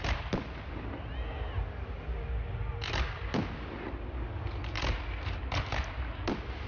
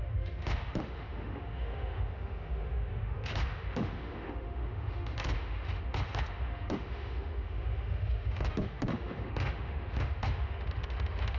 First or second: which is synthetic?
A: second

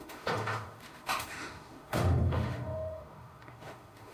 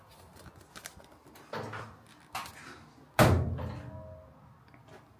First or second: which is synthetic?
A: first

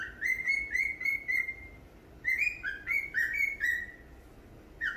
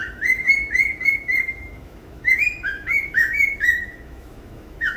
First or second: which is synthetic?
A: second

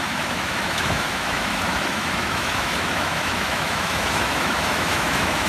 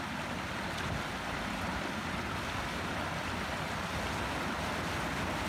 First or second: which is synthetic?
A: first